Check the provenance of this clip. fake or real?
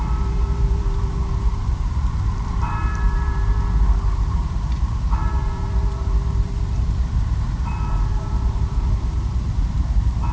fake